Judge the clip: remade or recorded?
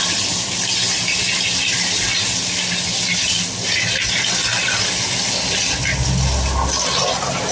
recorded